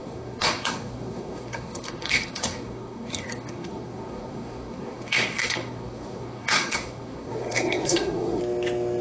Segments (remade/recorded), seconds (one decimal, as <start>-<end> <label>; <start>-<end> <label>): 0.0-8.4 remade; 8.4-9.0 recorded